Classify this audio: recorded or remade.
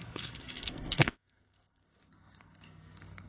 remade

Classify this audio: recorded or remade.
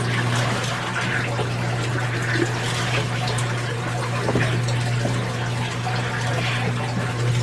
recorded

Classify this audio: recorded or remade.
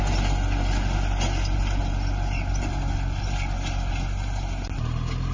recorded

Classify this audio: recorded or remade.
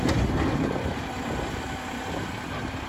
recorded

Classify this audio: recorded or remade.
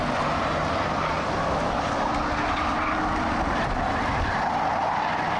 recorded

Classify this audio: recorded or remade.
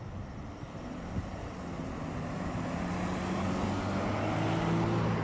recorded